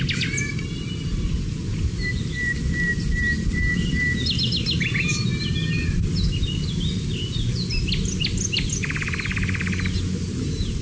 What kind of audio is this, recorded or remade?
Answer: recorded